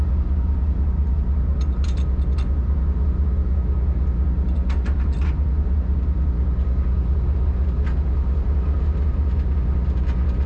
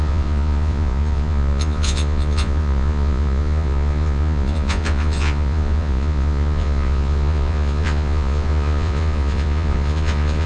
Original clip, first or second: first